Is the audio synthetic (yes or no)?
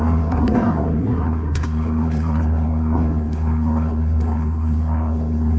yes